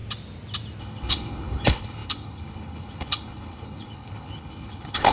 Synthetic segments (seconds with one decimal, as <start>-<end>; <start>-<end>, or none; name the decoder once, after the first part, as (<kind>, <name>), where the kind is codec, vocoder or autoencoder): 0.8-5.1 (codec, HILCodec)